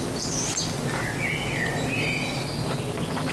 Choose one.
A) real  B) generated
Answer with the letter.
A